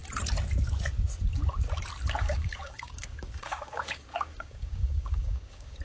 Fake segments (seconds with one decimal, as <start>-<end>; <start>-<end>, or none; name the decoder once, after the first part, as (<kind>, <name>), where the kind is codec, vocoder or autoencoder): 2.2-5.8 (codec, DAC)